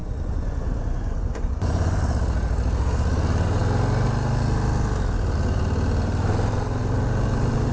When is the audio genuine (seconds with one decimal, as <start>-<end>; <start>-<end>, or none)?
2.0-7.7